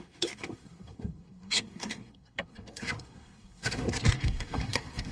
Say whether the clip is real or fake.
fake